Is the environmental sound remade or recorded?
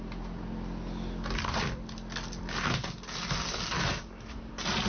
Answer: recorded